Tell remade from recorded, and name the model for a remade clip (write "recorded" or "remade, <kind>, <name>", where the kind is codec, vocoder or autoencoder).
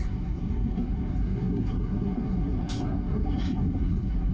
remade, codec, SNAC